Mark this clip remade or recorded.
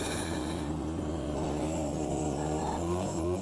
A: remade